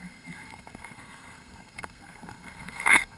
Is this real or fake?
fake